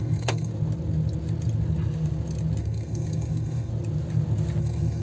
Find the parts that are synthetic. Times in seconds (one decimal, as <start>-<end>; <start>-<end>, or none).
0.0-0.5; 2.6-3.7; 4.6-5.0